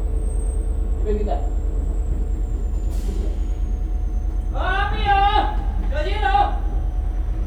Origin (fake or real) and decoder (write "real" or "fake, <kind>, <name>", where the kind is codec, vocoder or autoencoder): real